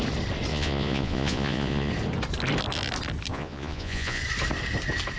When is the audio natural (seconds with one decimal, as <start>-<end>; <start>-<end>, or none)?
0.0-0.5; 1.9-3.3; 4.2-5.2